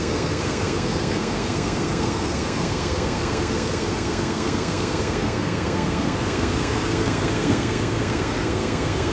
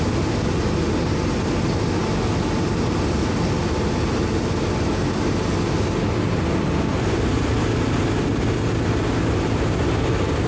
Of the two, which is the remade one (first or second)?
first